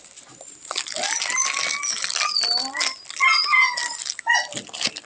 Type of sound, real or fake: real